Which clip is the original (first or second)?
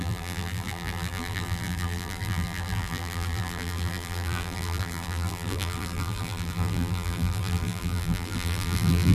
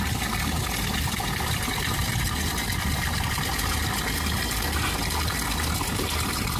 second